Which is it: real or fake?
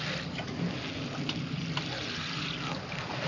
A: real